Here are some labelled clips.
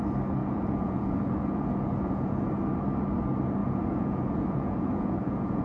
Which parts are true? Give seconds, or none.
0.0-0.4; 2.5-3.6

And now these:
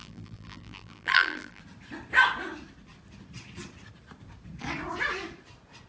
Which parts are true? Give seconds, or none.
1.6-5.9

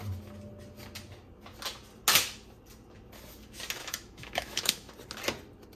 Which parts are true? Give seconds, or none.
0.0-3.8; 4.9-5.8

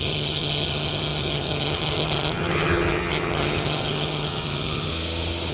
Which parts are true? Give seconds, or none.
4.9-5.5

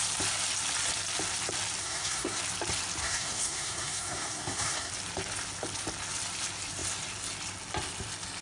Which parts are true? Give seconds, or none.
0.0-1.8; 2.4-3.0; 4.9-8.4

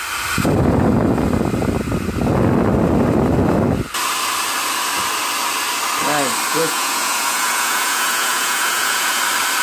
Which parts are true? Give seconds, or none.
0.0-6.5; 9.2-9.6